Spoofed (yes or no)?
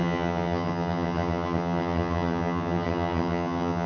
yes